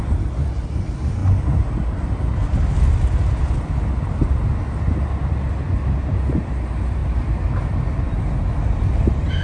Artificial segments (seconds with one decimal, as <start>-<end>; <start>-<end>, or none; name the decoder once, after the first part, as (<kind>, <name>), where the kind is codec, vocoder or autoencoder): 7.0-8.2 (vocoder, BigVGAN v2)

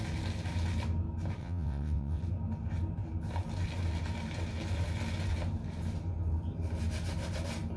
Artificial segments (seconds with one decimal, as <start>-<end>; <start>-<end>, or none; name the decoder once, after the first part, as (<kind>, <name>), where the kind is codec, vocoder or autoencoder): 1.4-2.2 (vocoder, WaveNeXt)

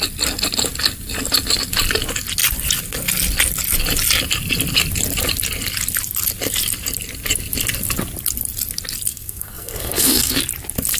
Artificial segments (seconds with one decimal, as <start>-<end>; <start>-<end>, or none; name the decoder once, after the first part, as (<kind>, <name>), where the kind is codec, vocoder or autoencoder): 9.1-10.4 (codec, SNAC)

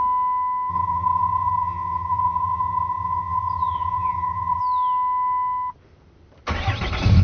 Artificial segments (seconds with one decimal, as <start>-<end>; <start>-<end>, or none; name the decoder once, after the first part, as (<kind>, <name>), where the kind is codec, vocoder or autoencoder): 0.7-4.6 (vocoder, HiFi-GAN)